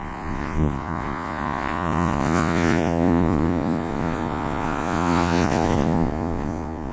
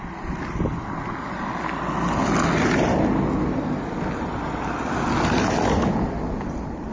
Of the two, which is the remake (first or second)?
first